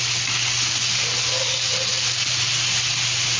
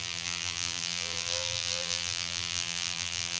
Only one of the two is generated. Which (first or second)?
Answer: second